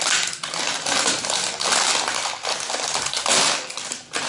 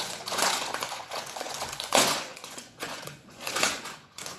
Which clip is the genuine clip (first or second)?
first